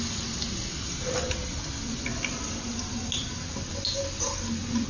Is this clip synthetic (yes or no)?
no